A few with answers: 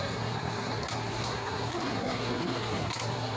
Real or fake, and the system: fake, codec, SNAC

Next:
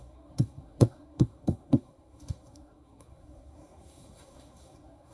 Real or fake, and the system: fake, codec, SNAC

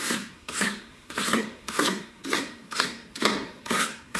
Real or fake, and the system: fake, codec, SNAC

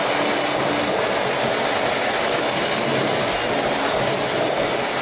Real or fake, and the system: real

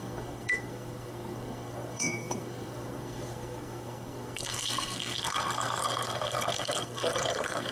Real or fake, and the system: fake, codec, SNAC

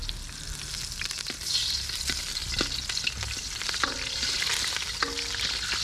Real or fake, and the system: real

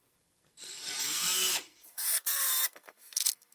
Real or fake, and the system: fake, codec, SNAC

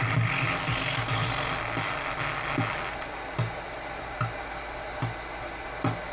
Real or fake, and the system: real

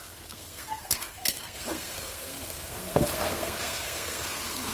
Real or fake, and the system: fake, codec, SNAC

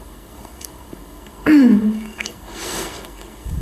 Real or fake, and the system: fake, codec, SNAC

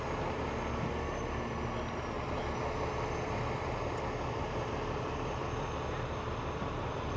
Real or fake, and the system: real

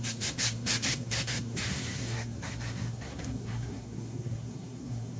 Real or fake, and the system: fake, codec, SNAC